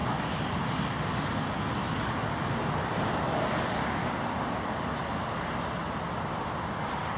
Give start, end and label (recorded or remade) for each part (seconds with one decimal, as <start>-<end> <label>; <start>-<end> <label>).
0.0-7.2 recorded